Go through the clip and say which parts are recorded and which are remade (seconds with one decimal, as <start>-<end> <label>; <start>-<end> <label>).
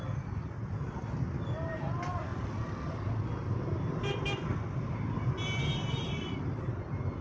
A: 0.0-7.2 recorded